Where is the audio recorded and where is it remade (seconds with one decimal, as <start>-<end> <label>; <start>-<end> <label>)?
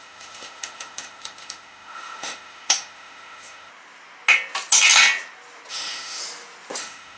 0.0-3.7 remade; 3.7-5.7 recorded; 5.7-6.2 remade; 6.2-6.8 recorded; 6.8-7.2 remade